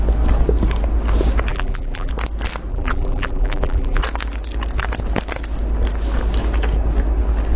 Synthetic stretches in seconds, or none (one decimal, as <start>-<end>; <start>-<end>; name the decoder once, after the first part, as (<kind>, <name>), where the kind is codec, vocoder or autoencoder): 1.5-2.1 (vocoder, BigVGAN v2); 2.7-4.0